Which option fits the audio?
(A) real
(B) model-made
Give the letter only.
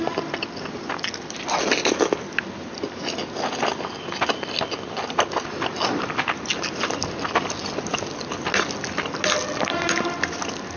A